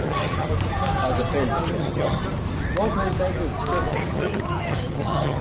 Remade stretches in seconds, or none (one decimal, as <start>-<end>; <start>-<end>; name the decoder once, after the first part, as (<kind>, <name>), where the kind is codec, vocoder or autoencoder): 0.0-0.5 (vocoder, HiFi-GAN); 1.7-2.2; 3.9-5.4